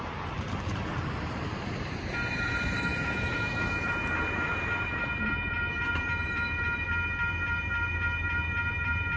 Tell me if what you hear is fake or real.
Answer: fake